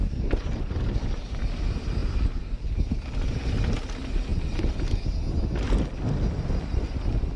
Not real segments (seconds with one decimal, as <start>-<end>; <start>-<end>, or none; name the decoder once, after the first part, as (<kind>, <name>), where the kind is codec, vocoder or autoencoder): none